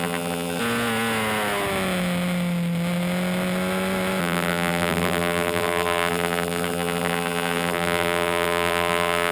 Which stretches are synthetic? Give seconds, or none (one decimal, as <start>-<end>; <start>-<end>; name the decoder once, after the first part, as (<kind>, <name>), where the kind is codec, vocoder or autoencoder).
0.0-0.6 (vocoder, BigVGAN v2); 4.2-9.3